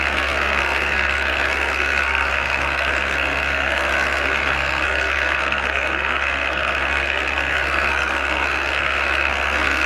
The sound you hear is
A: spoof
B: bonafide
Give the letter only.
A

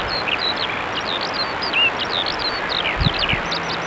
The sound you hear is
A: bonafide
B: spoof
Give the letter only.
A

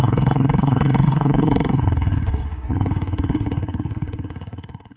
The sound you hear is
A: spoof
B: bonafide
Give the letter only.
A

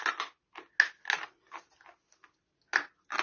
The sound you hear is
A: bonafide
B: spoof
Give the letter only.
A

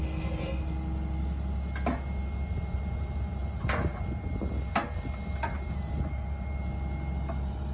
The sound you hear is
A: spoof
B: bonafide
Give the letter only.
B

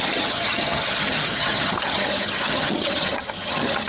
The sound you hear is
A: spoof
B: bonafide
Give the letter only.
A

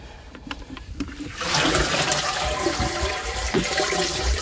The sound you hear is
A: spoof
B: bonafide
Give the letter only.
A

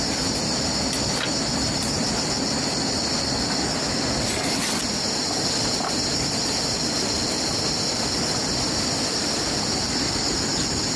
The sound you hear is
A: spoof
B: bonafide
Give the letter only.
B